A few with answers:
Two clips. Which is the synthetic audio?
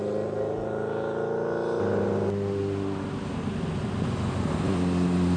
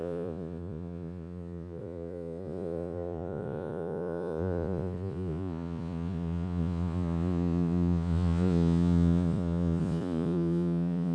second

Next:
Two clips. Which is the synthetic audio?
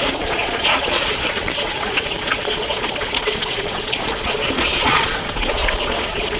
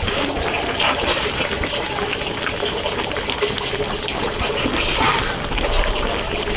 first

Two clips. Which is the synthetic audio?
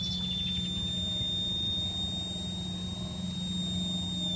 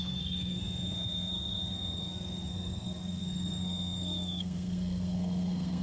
second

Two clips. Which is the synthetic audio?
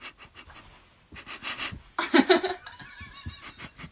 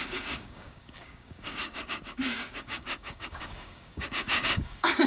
second